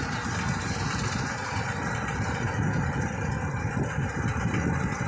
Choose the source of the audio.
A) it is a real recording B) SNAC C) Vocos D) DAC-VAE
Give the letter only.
A